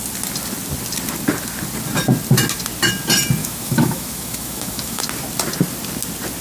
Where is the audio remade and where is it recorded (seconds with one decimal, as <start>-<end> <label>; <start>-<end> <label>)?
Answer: 0.0-3.4 recorded; 3.4-5.0 remade; 5.0-6.4 recorded